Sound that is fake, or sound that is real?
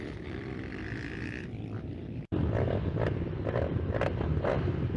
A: real